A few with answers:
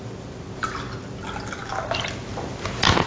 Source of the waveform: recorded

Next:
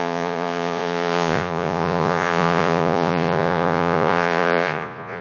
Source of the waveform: remade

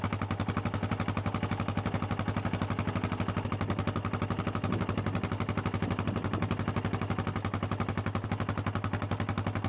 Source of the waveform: recorded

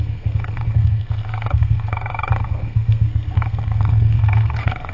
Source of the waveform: remade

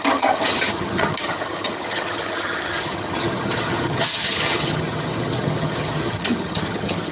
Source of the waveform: remade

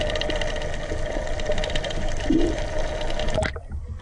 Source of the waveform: recorded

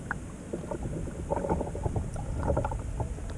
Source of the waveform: recorded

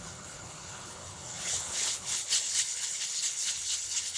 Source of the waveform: remade